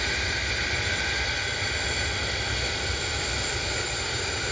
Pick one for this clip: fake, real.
real